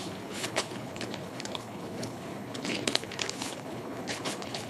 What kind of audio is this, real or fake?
fake